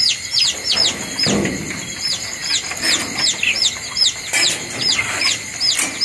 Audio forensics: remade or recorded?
recorded